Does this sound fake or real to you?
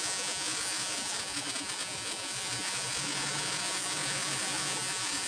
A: fake